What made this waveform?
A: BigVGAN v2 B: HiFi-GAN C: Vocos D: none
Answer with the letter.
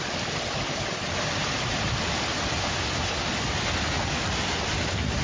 D